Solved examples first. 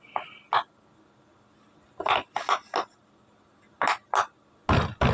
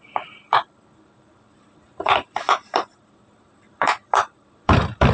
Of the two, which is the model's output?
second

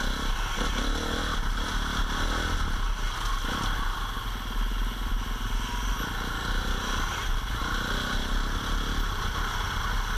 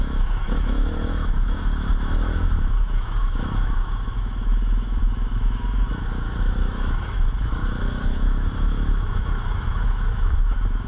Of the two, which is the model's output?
second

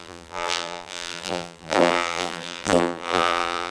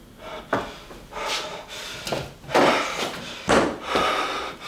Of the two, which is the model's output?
first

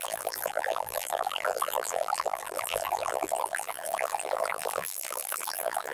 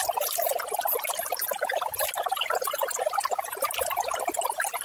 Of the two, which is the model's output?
first